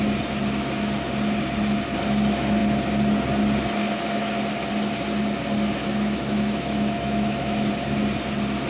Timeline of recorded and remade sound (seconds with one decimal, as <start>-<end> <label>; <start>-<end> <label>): 0.0-5.8 recorded; 5.8-7.7 remade; 7.7-8.7 recorded